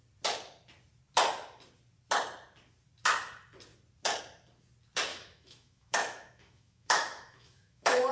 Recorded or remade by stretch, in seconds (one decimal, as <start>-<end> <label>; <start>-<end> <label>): 0.0-5.1 recorded; 5.1-8.1 remade